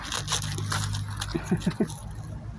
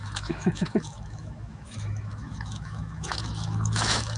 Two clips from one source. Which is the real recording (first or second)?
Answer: first